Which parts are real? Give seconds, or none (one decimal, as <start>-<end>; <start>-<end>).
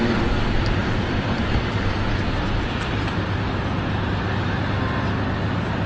0.0-0.8; 4.3-5.9